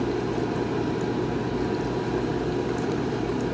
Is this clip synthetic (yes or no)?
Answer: no